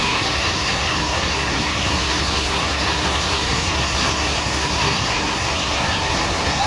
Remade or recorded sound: remade